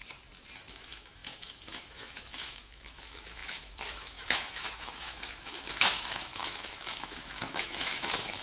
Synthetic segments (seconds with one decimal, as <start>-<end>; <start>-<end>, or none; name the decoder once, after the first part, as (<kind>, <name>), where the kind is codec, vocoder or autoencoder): 0.7-8.4 (autoencoder, DAC-VAE)